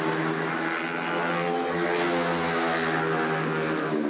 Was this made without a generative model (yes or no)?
yes